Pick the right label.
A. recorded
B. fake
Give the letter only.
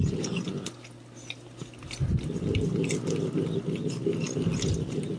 A